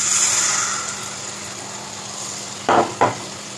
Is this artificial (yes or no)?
no